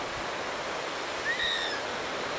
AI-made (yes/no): no